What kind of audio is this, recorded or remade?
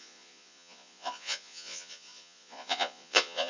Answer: remade